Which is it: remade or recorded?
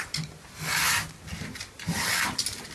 recorded